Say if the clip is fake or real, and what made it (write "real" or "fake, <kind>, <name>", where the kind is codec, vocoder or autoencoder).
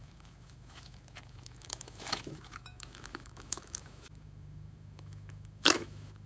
fake, autoencoder, DAC-VAE